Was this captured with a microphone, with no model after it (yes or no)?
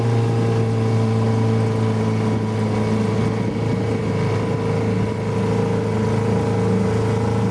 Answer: yes